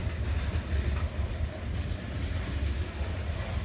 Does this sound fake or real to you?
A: real